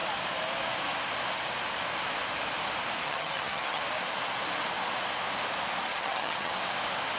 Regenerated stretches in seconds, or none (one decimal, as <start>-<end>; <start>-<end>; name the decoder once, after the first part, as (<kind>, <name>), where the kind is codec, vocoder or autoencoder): 3.0-3.8 (vocoder, HiFi-GAN); 5.9-6.5